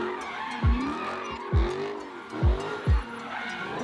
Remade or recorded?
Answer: recorded